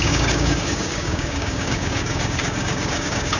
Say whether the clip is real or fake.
fake